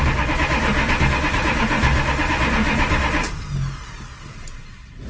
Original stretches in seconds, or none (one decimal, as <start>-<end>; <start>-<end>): 0.7-1.3; 1.9-5.1